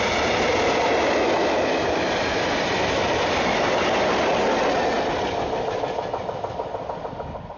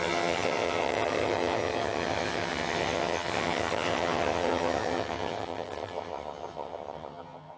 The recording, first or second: first